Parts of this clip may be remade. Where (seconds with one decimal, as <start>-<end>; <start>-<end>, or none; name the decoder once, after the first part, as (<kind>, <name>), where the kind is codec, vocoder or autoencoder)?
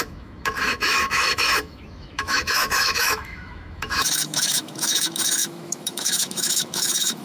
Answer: 0.0-7.2 (autoencoder, DAC-VAE)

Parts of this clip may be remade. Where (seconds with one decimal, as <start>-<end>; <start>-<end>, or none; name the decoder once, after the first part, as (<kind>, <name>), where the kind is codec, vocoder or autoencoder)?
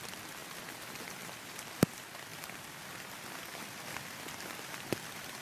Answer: none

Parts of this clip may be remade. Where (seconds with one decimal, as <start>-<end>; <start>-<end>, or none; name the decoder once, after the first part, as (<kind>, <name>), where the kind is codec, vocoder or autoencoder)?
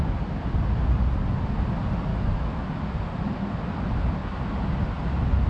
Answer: 2.1-2.9 (autoencoder, DAC-VAE)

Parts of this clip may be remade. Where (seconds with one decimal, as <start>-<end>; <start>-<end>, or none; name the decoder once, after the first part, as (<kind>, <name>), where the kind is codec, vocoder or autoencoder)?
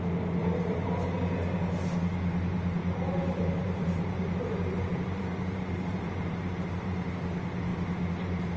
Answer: 0.4-0.9 (vocoder, BigVGAN v2); 2.8-7.1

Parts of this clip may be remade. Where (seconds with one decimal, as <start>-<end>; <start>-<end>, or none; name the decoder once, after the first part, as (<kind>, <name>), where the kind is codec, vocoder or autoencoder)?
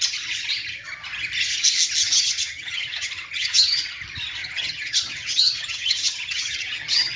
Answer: 2.0-3.8 (vocoder, HiFi-GAN); 4.4-7.2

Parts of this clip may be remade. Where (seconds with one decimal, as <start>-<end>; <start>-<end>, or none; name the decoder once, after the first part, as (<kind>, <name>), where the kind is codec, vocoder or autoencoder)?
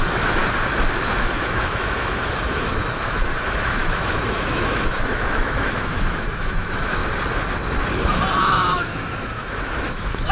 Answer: 0.0-0.4 (autoencoder, DAC-VAE); 1.2-7.0; 8.4-10.3